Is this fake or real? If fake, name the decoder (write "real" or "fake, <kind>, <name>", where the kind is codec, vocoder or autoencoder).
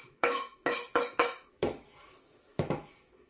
fake, autoencoder, DAC-VAE